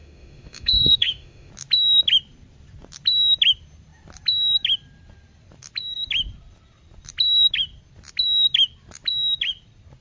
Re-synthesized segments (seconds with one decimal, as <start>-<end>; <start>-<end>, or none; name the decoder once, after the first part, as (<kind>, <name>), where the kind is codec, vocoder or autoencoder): 0.0-1.5 (autoencoder, DAC-VAE)